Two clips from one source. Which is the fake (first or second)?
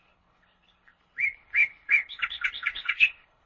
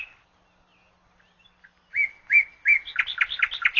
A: first